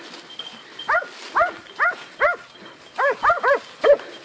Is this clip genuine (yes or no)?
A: yes